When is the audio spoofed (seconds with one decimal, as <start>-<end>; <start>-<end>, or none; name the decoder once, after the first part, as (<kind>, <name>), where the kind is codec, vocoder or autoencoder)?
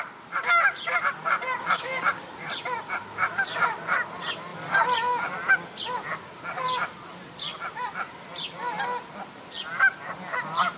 none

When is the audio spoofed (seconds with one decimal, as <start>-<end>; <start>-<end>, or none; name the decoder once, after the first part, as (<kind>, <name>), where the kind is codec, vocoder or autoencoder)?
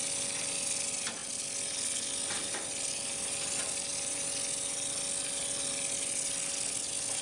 none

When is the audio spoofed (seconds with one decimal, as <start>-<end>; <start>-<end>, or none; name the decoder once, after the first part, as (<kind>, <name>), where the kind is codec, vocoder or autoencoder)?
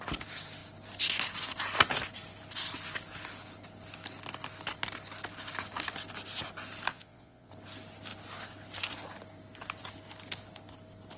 6.9-7.5 (vocoder, Vocos)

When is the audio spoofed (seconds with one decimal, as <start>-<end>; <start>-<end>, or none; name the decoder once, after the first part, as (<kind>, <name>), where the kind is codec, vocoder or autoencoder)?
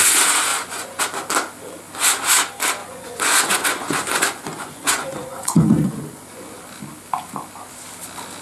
0.5-1.0 (vocoder, Vocos); 2.8-6.6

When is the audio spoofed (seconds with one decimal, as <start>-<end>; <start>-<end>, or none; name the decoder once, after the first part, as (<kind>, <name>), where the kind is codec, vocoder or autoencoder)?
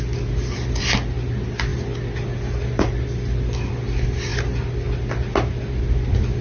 none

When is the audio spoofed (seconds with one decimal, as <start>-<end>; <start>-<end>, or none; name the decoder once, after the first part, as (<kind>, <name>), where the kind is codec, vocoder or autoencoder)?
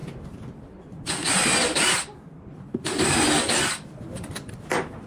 none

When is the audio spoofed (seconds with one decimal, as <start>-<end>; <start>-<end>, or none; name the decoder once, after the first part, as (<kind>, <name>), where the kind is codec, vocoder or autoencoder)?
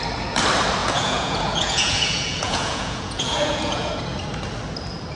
0.8-3.9 (vocoder, Vocos)